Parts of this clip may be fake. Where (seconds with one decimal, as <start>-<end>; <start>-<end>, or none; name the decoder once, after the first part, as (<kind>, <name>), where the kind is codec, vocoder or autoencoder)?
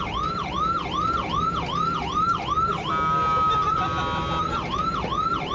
none